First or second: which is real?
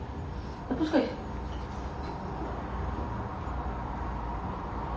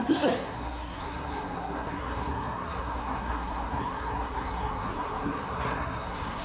first